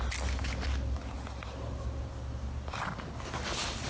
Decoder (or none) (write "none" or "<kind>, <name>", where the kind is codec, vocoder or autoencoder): none